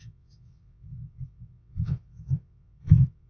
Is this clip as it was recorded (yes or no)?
no